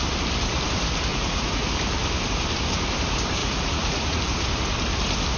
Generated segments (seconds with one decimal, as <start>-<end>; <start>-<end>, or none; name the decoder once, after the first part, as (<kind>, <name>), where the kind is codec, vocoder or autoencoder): 1.1-1.7 (vocoder, Vocos); 3.4-4.2